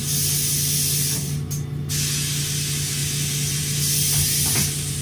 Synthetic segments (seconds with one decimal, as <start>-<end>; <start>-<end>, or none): none